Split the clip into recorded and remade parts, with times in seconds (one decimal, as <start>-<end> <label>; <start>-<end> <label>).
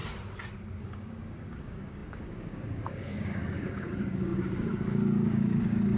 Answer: 0.0-0.8 recorded; 0.8-6.0 remade